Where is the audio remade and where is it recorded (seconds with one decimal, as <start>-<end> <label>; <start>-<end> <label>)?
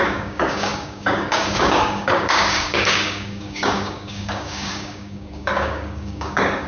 0.0-6.7 remade